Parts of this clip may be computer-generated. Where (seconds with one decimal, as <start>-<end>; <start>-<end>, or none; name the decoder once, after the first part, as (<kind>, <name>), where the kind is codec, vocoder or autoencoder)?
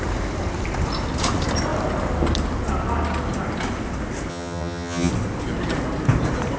4.3-5.1 (vocoder, HiFi-GAN)